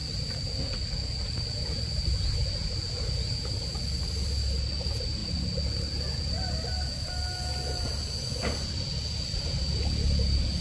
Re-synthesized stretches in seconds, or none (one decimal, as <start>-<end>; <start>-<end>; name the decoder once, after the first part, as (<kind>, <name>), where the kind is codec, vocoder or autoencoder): none